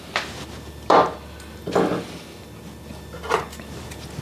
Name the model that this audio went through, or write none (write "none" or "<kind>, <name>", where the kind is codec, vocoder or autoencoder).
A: vocoder, BigVGAN v2